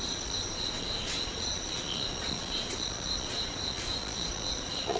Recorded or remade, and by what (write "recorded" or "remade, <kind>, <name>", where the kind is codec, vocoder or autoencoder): remade, vocoder, Vocos